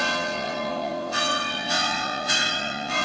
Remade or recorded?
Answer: remade